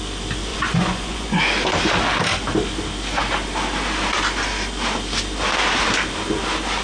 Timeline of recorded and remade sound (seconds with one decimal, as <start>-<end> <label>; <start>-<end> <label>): 0.0-0.5 recorded; 0.5-1.4 remade; 1.4-6.8 recorded